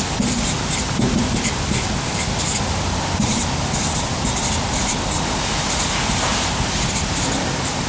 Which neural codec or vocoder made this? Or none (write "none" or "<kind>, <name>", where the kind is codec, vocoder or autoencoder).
none